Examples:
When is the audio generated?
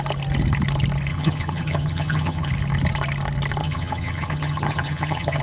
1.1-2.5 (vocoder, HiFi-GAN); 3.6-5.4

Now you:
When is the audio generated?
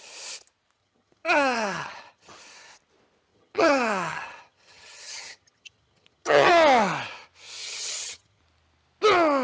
0.8-2.4 (vocoder, HiFi-GAN); 3.3-6.5; 7.6-8.4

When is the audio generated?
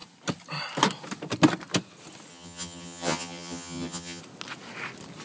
2.3-4.2 (vocoder, HiFi-GAN)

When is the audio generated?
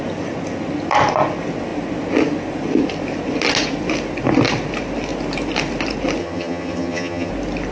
6.2-7.3 (vocoder, HiFi-GAN)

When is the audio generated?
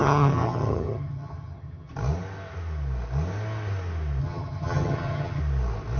0.0-1.9 (vocoder, HiFi-GAN); 4.2-5.4